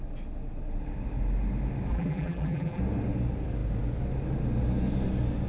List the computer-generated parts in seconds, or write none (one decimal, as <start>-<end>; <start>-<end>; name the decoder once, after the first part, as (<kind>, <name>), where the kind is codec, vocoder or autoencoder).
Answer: 1.9-2.8 (vocoder, BigVGAN v2)